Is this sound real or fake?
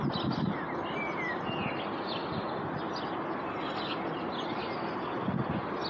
real